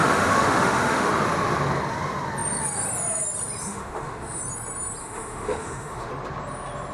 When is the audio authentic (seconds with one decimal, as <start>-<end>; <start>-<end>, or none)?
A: 1.1-3.6; 4.4-5.0; 6.1-6.9